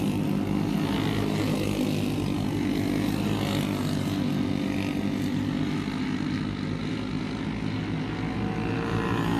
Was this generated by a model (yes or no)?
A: no